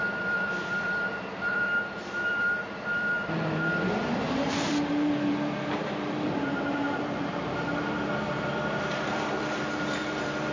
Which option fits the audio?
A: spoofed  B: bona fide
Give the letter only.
A